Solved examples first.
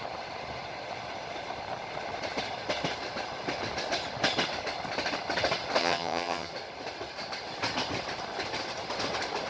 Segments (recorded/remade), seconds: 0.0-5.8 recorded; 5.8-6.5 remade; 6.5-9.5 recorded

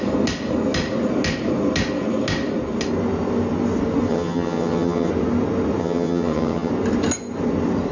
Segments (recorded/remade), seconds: 0.0-4.1 recorded; 4.1-5.1 remade; 5.1-5.8 recorded; 5.8-6.7 remade; 6.7-7.9 recorded